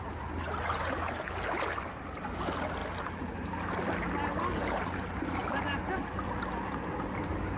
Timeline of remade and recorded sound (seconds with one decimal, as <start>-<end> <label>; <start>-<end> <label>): 0.0-7.6 recorded